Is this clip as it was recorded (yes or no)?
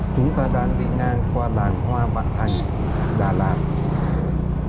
yes